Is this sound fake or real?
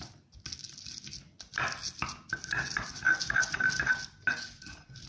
real